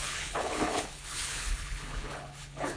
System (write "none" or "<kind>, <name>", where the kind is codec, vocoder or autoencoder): codec, HILCodec